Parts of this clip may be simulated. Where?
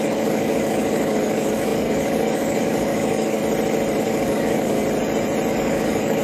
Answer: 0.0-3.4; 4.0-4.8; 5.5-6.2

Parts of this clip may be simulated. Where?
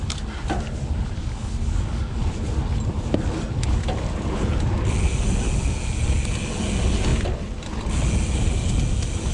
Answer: 1.2-2.2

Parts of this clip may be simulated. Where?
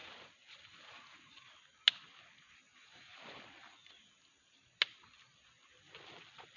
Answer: none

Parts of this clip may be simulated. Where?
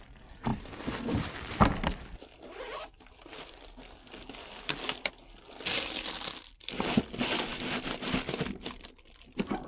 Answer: none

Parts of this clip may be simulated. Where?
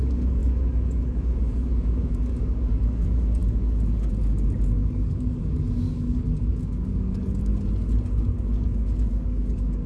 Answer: 0.0-7.5; 8.2-9.9